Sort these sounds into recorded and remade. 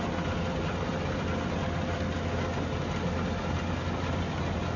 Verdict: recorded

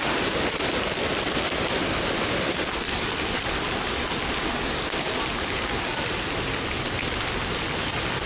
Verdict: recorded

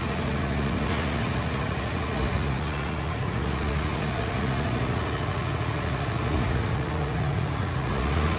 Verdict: remade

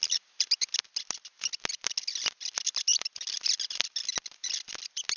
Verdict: recorded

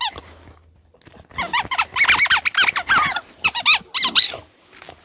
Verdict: recorded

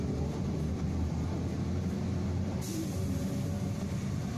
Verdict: recorded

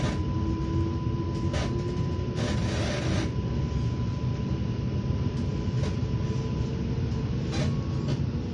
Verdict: recorded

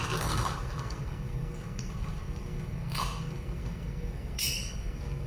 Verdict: remade